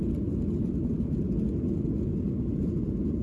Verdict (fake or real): real